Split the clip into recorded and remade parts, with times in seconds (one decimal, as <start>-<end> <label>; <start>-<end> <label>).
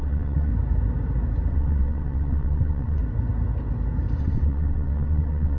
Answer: 0.0-0.5 remade; 0.5-1.5 recorded; 1.5-3.0 remade; 3.0-4.2 recorded; 4.2-5.6 remade